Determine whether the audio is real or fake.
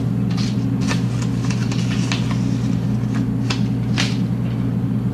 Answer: real